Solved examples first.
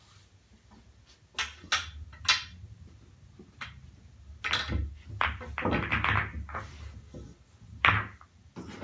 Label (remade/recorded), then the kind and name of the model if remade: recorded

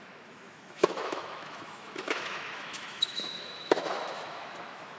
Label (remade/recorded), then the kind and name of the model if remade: remade, autoencoder, DAC-VAE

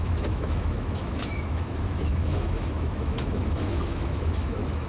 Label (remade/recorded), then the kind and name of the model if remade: remade, autoencoder, DAC-VAE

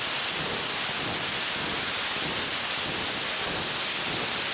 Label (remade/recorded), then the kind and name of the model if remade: recorded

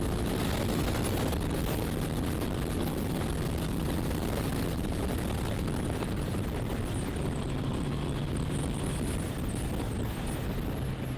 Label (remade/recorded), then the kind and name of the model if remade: recorded